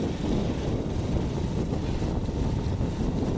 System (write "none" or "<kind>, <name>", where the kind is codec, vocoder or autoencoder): none